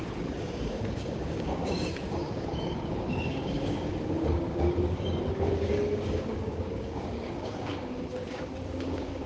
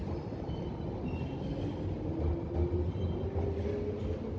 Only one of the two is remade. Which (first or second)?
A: first